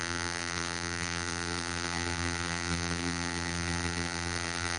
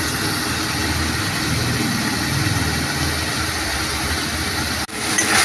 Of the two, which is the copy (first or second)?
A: first